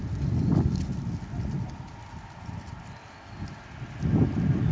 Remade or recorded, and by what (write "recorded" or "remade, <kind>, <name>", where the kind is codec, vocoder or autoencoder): recorded